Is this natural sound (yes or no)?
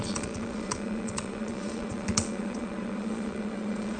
no